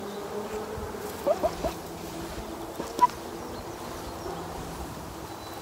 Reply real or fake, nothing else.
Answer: real